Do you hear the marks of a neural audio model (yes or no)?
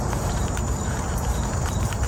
yes